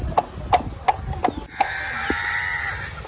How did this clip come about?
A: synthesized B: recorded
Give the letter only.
B